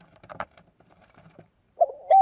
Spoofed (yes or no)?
yes